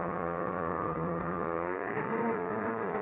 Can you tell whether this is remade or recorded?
remade